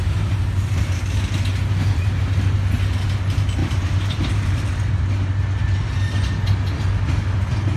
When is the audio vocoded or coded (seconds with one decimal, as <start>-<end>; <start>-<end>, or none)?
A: 0.0-1.0; 3.6-4.9